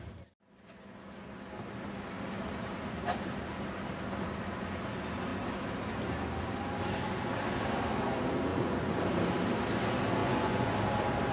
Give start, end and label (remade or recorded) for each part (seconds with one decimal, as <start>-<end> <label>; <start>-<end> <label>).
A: 0.0-8.5 recorded; 8.5-9.0 remade; 9.0-10.2 recorded; 10.2-10.7 remade; 10.7-11.3 recorded